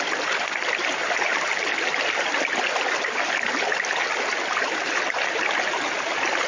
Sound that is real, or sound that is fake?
real